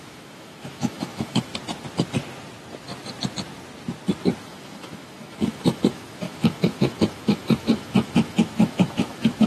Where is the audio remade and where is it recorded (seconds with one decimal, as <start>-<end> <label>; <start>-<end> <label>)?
0.0-1.5 remade; 1.5-4.4 recorded; 4.4-9.5 remade